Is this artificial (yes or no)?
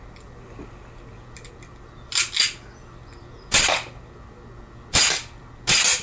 no